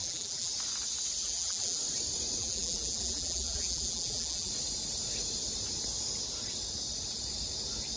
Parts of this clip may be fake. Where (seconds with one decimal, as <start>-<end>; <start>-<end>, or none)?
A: 0.0-0.5; 1.2-1.8; 2.4-4.5